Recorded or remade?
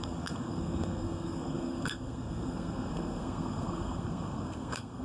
remade